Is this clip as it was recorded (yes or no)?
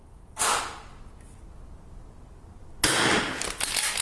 yes